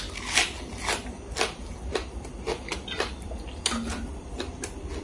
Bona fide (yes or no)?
yes